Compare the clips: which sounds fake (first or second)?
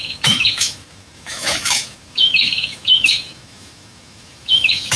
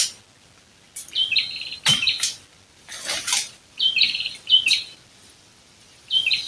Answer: first